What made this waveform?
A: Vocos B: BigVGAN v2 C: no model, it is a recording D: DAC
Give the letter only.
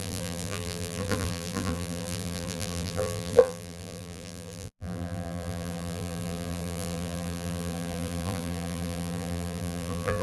B